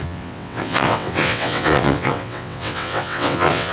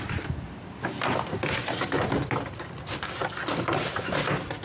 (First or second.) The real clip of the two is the second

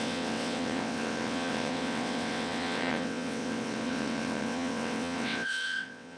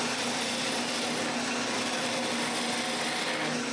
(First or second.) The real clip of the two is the second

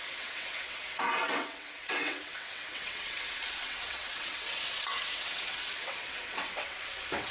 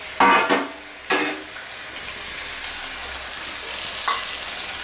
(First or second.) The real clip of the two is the second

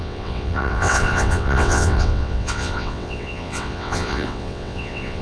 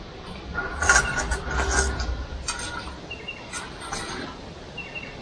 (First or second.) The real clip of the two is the second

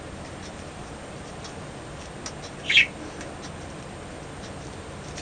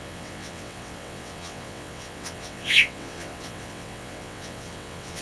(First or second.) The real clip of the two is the first